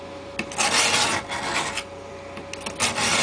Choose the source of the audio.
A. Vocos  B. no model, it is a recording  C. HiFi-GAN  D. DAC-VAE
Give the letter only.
B